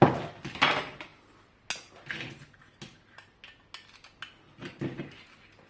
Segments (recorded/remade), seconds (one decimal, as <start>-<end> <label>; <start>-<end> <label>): 0.0-4.6 recorded; 4.6-5.1 remade; 5.1-5.7 recorded